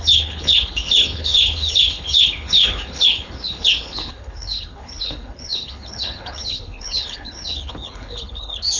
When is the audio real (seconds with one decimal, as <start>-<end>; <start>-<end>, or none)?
none